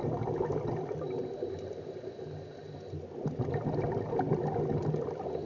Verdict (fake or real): real